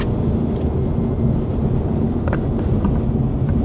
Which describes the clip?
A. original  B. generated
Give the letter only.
A